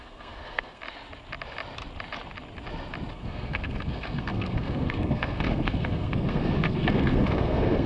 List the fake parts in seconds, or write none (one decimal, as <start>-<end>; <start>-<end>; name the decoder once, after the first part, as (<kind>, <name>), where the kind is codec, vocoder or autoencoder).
0.0-0.8 (codec, SNAC); 3.1-7.9